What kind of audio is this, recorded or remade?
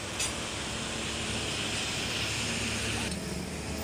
recorded